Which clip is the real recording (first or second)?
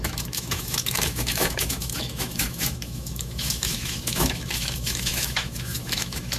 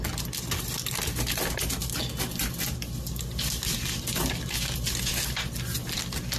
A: second